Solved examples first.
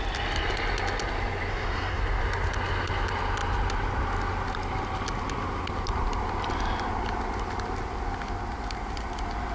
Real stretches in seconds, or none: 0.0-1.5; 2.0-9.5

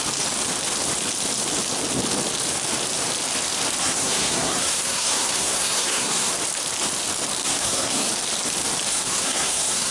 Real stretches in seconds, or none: 0.0-3.8; 6.3-7.4; 8.1-8.9

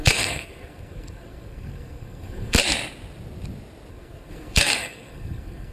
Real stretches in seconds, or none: 2.6-3.9

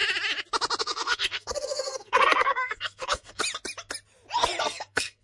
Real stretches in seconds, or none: 0.0-0.8; 3.4-4.6